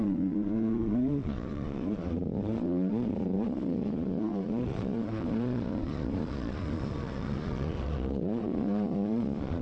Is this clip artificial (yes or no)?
yes